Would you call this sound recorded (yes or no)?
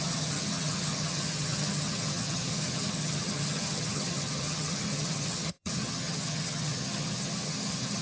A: no